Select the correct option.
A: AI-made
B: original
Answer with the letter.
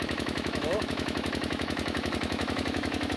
A